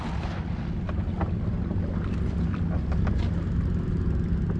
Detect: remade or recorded recorded